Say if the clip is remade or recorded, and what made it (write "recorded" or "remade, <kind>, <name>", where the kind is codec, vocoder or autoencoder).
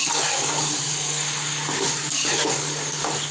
remade, codec, DAC